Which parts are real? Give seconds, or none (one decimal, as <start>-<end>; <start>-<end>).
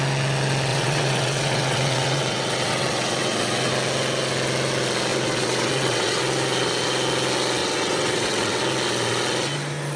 0.0-0.7; 3.7-5.1; 6.2-7.6; 8.6-10.0